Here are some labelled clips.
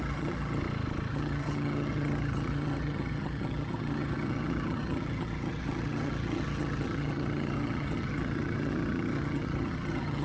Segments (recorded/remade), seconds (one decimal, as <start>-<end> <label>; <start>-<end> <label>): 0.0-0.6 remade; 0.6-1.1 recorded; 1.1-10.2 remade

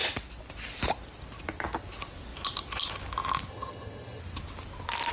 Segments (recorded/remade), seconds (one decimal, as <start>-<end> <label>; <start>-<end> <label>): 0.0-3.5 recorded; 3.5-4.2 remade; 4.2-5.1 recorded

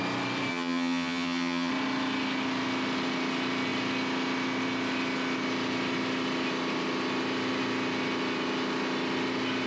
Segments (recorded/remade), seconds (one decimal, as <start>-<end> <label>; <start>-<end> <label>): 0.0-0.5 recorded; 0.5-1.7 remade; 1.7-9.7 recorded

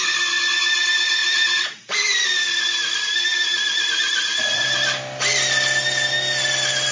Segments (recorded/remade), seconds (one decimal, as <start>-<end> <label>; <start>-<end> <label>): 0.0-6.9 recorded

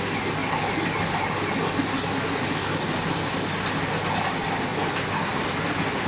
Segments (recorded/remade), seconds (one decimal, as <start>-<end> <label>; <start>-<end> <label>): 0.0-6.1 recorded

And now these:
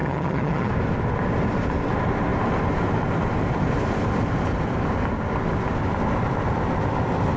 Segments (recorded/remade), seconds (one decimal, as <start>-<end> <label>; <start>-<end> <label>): 0.0-0.7 remade; 0.7-7.4 recorded

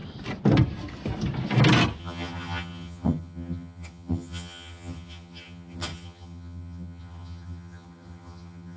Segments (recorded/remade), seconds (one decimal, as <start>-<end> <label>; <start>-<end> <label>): 0.0-2.0 recorded; 2.0-8.8 remade